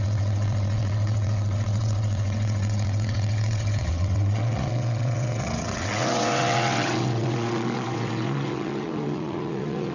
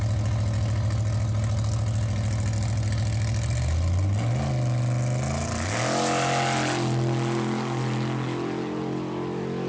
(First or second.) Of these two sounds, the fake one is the first